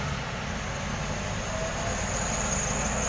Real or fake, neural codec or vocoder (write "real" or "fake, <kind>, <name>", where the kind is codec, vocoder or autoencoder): real